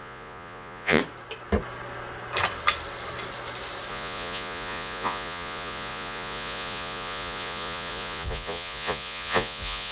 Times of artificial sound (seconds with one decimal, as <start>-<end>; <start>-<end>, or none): 0.0-1.0; 3.9-9.9